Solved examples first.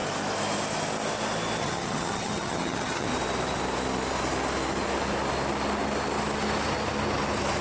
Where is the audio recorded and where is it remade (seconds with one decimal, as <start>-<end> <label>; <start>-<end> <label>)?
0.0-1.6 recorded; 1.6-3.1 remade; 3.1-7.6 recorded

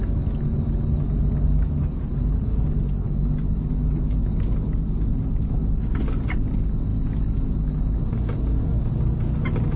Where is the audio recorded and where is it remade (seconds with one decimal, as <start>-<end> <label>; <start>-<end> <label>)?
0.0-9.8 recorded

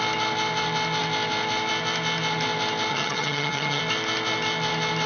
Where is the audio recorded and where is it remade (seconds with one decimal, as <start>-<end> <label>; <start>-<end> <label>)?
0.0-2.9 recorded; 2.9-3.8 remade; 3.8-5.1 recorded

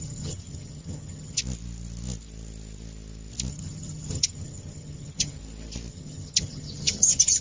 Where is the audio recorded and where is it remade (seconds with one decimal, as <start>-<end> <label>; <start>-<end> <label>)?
0.0-1.4 remade; 1.4-3.5 recorded; 3.5-5.4 remade; 5.4-5.9 recorded; 5.9-7.4 remade

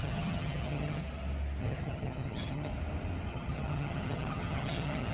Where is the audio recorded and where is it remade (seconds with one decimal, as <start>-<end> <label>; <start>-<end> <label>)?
0.0-1.0 remade; 1.0-1.6 recorded; 1.6-2.7 remade; 2.7-3.3 recorded; 3.3-5.1 remade

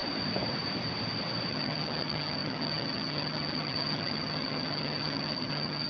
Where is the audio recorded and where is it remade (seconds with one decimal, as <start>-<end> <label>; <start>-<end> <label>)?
0.0-1.5 recorded; 1.5-5.9 remade

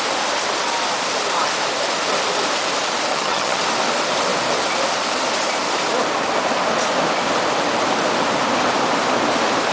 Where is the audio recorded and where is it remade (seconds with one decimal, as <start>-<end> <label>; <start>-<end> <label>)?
0.0-3.1 recorded; 3.1-3.6 remade; 3.6-9.7 recorded

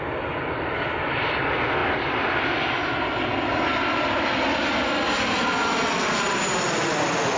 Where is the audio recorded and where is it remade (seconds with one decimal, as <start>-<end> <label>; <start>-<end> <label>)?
0.0-7.4 recorded